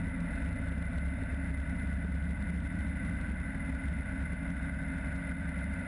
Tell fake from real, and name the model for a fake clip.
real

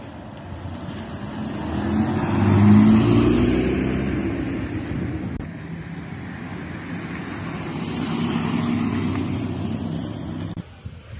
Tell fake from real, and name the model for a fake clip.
real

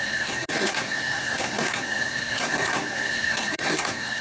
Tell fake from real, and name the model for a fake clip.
fake, codec, SNAC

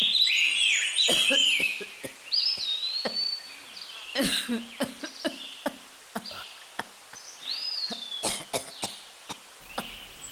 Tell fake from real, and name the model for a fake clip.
real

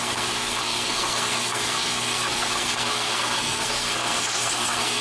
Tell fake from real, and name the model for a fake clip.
fake, codec, SNAC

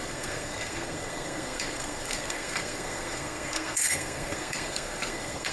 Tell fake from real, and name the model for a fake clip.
fake, codec, SNAC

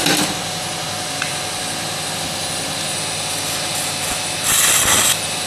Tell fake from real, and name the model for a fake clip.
real